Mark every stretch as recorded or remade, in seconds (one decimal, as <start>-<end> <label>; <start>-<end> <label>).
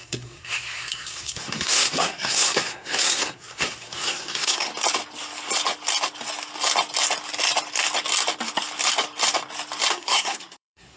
0.0-4.7 remade; 4.7-9.9 recorded; 9.9-11.0 remade